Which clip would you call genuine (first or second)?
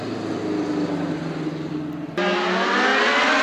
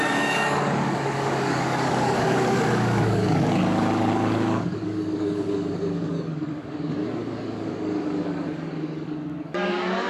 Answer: first